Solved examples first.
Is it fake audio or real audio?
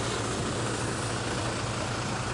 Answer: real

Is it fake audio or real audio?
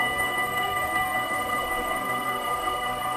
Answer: fake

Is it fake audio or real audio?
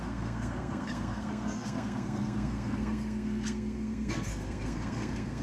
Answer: fake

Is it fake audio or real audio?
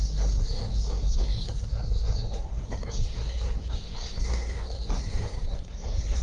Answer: fake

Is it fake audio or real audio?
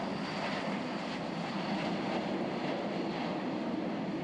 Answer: real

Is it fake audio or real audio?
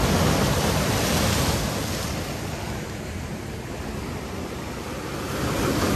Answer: real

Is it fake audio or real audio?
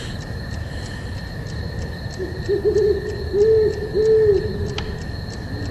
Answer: real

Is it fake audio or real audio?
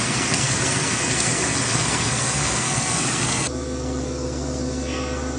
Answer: fake